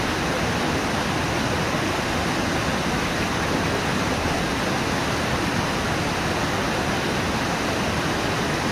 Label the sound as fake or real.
real